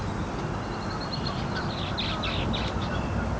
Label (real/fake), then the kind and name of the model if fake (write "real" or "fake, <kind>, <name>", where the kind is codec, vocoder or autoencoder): real